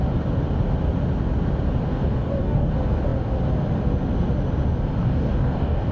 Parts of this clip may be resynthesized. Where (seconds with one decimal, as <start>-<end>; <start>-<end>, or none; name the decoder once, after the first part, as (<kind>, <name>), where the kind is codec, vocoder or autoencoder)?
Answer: 1.9-2.7 (codec, DAC); 5.0-5.9